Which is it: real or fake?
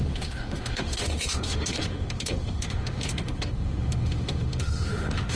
fake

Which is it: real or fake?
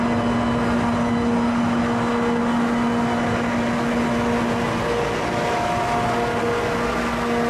real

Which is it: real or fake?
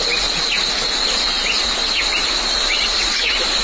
real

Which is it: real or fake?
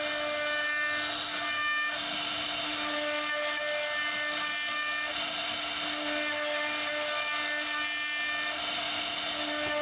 real